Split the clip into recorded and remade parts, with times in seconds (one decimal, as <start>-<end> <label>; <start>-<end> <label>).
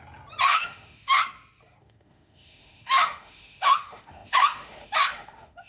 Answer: 0.0-0.5 recorded; 0.5-1.2 remade; 1.2-1.8 recorded; 1.8-5.7 remade